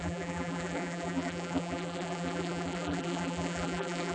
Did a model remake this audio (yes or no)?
yes